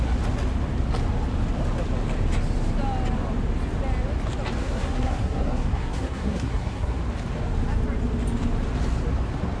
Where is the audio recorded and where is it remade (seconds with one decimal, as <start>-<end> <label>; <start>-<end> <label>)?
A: 0.0-4.6 recorded; 4.6-7.0 remade; 7.0-9.6 recorded